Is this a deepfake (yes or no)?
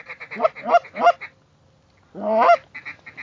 no